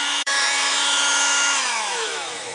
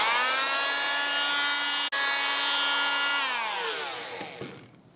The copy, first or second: first